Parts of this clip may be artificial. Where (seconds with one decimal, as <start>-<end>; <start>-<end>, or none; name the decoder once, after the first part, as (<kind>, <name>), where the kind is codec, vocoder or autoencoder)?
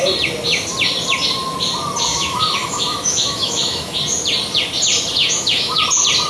2.1-4.0 (autoencoder, DAC-VAE); 5.2-5.8